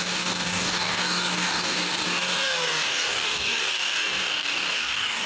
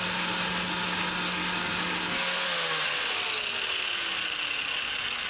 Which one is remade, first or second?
first